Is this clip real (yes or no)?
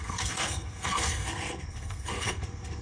no